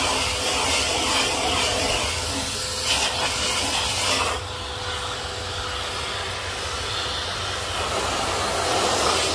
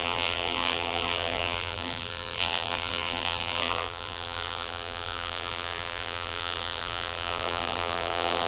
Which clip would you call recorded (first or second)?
first